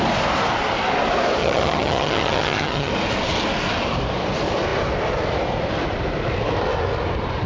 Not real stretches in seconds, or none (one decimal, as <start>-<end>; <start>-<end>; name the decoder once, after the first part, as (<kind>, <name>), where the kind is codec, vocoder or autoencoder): 1.4-2.9 (vocoder, HiFi-GAN)